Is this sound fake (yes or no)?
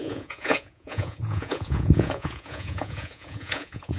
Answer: yes